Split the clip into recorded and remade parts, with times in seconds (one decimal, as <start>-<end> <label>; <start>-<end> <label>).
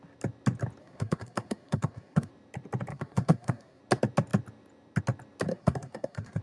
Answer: 0.0-0.8 recorded; 0.8-2.3 remade; 2.3-2.9 recorded; 2.9-3.8 remade; 3.8-5.5 recorded; 5.5-6.4 remade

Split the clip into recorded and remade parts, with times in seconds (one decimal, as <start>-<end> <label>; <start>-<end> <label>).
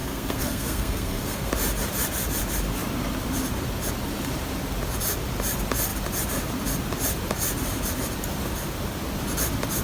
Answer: 0.0-1.5 remade; 1.5-9.8 recorded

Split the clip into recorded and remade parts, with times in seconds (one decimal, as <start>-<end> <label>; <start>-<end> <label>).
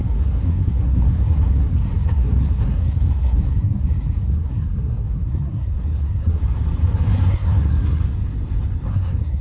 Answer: 0.0-6.4 remade; 6.4-7.3 recorded; 7.3-8.0 remade; 8.0-8.9 recorded; 8.9-9.4 remade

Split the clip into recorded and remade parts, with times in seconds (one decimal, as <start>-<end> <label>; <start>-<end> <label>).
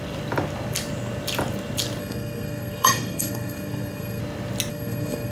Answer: 0.0-2.0 recorded; 2.0-4.2 remade; 4.2-4.7 recorded; 4.7-5.3 remade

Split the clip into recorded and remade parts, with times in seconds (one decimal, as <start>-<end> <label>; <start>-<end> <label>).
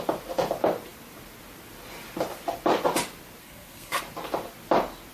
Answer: 0.0-3.4 recorded; 3.4-4.0 remade; 4.0-5.1 recorded